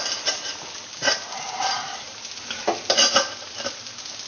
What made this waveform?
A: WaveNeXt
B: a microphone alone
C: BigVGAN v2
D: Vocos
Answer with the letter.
B